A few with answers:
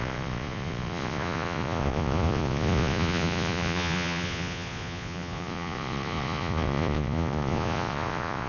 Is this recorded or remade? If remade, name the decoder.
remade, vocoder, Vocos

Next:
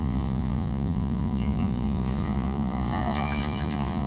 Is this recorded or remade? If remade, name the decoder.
remade, vocoder, Vocos